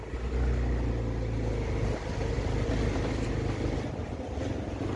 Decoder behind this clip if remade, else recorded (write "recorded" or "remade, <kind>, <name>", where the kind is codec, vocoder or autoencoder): recorded